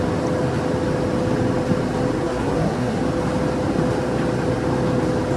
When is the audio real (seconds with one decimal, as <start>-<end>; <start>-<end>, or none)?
0.0-2.2; 3.0-5.4